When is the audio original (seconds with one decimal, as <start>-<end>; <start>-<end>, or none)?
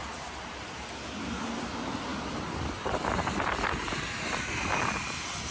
0.0-5.5